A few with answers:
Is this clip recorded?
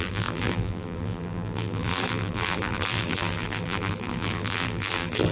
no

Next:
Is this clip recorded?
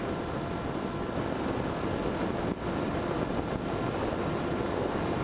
yes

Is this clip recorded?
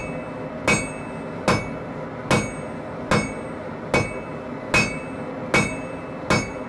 yes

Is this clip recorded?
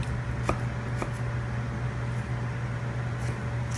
yes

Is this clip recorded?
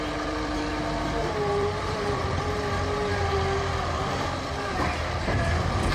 no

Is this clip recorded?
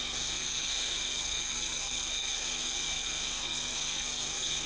no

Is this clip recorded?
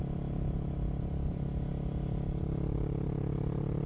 yes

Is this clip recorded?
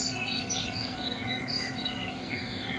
no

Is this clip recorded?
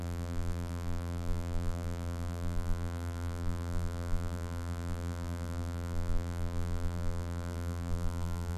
no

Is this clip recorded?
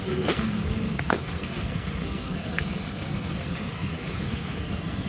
no